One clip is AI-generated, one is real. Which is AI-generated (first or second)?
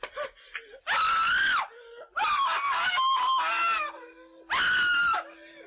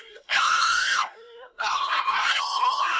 second